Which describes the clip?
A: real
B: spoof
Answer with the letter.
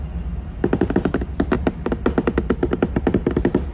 A